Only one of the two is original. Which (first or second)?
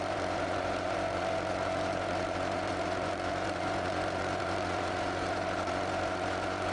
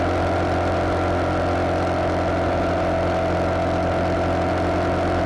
second